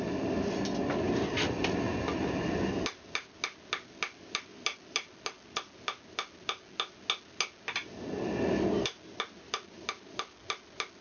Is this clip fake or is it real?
real